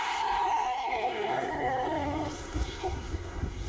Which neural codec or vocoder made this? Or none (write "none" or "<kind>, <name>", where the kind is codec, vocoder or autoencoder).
codec, SNAC